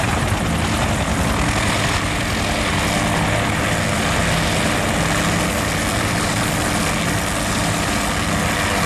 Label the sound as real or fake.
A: real